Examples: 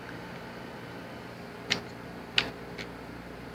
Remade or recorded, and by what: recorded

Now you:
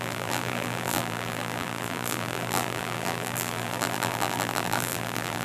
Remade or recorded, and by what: remade, vocoder, BigVGAN v2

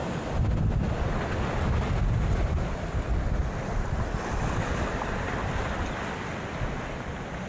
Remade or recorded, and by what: recorded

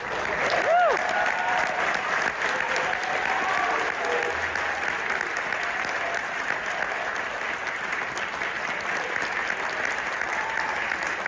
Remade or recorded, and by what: recorded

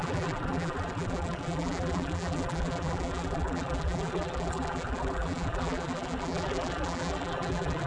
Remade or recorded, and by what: remade, vocoder, BigVGAN v2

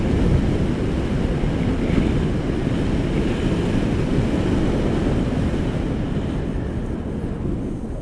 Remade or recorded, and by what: recorded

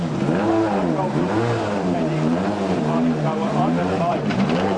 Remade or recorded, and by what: remade, vocoder, BigVGAN v2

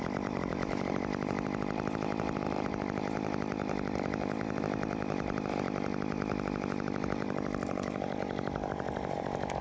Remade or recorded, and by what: remade, vocoder, BigVGAN v2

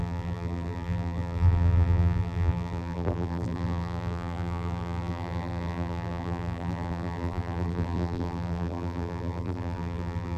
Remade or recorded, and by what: remade, vocoder, BigVGAN v2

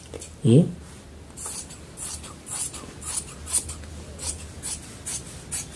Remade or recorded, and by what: recorded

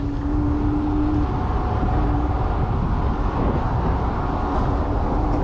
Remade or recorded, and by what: recorded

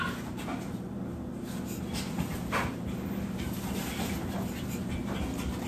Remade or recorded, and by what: recorded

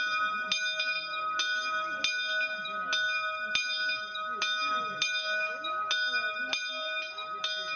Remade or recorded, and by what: recorded